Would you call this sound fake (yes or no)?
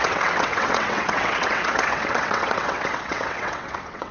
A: yes